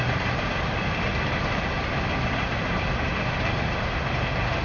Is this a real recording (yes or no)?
yes